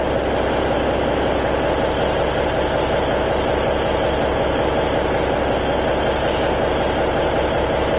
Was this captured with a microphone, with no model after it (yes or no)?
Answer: yes